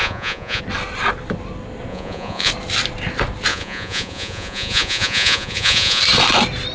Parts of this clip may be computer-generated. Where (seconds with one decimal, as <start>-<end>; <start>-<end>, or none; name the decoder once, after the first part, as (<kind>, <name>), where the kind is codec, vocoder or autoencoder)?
0.0-0.6 (vocoder, Vocos); 1.9-2.5; 3.5-6.0